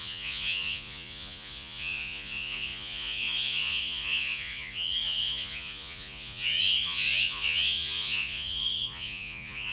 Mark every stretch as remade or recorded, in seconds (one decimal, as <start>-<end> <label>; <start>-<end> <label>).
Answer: 0.0-9.7 remade